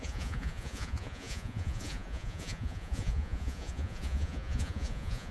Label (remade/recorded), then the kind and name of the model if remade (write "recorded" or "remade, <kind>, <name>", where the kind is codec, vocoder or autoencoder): remade, vocoder, Vocos